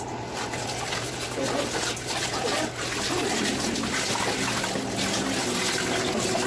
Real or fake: real